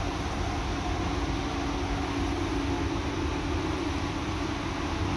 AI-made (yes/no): no